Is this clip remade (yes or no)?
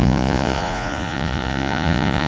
yes